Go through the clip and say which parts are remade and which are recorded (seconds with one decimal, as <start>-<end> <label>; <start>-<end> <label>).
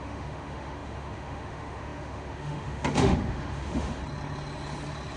0.0-4.0 remade; 4.0-5.2 recorded